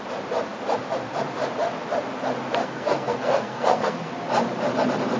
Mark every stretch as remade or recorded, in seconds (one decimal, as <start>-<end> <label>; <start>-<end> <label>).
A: 0.0-2.6 recorded; 2.6-4.1 remade; 4.1-5.2 recorded